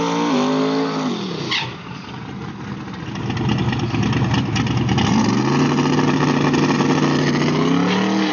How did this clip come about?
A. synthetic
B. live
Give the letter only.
B